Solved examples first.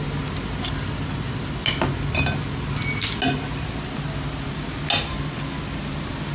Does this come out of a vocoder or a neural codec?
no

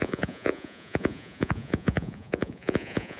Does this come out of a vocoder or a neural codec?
yes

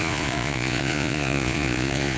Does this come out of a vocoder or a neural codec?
yes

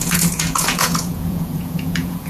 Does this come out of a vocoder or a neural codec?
yes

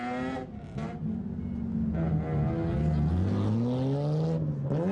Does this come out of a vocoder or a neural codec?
no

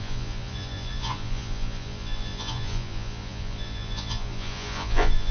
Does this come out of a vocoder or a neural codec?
yes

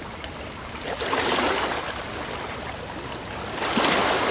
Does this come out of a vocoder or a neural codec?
no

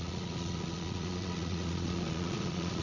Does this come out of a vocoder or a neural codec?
yes